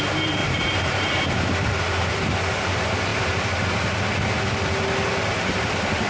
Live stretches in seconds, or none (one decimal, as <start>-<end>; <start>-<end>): 0.0-0.4; 1.2-6.1